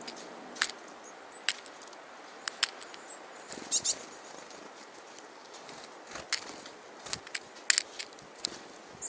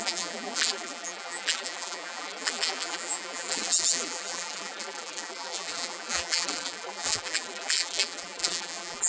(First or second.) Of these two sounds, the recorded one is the first